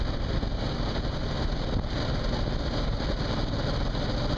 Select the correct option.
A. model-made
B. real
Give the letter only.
B